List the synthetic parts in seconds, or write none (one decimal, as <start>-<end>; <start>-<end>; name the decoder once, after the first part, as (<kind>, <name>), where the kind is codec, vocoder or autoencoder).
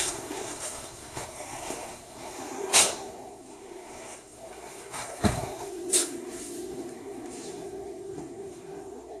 0.0-9.2 (codec, SNAC)